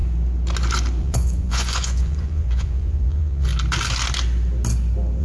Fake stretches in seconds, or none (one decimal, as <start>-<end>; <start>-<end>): 1.0-3.5